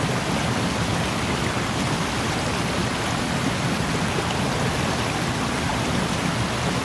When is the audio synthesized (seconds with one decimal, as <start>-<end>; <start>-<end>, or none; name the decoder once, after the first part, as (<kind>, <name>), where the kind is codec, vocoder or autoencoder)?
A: none